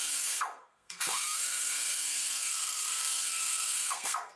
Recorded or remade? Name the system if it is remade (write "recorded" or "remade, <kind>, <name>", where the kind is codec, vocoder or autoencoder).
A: remade, codec, SNAC